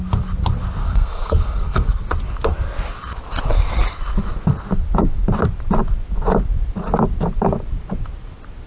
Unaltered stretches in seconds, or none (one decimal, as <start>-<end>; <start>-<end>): 0.0-0.8; 2.0-8.7